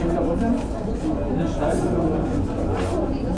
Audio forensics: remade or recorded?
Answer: recorded